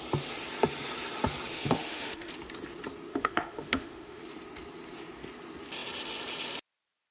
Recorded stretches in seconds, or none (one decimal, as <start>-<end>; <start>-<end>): 0.0-1.5; 2.3-3.1; 4.2-7.1